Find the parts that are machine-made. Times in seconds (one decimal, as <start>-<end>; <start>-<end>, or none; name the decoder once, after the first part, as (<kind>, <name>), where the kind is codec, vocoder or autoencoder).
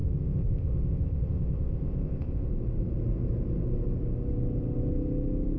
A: 0.0-2.5 (codec, ZipCodec)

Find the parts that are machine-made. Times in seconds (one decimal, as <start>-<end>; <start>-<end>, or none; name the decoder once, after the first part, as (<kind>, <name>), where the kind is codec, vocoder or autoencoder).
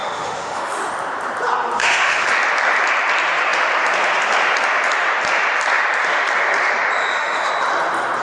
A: 0.0-0.9 (autoencoder, DAC-VAE); 1.8-2.3; 7.0-7.5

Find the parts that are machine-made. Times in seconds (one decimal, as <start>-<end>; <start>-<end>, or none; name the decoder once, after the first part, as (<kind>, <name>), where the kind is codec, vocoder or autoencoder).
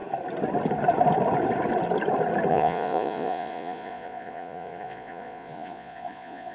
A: 2.5-6.5 (vocoder, Vocos)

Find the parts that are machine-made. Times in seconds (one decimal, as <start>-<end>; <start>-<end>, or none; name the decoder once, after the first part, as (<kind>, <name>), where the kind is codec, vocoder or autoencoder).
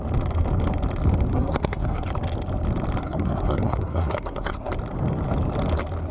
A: 1.3-2.1 (codec, SNAC); 3.0-4.7